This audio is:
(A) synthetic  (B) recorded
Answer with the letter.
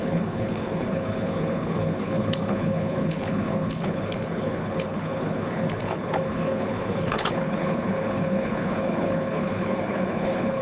A